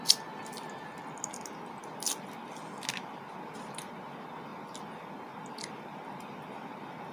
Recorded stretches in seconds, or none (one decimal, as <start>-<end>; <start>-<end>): 0.0-7.1